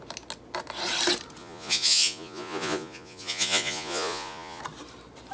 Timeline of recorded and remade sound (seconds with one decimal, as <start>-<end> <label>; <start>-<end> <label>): 0.0-1.4 recorded; 1.4-4.6 remade; 4.6-5.3 recorded